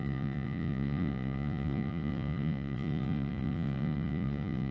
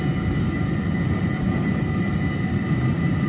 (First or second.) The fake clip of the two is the first